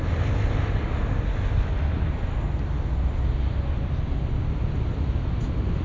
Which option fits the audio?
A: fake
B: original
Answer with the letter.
B